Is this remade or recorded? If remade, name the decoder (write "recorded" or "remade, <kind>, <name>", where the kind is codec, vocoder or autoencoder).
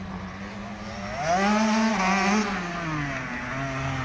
recorded